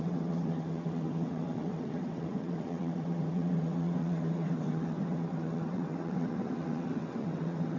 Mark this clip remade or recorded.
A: remade